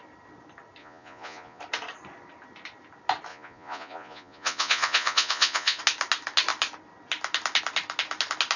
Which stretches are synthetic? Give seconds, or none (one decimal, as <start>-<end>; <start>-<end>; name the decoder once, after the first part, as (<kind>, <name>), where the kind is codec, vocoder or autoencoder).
0.8-1.6 (vocoder, Vocos); 3.3-5.8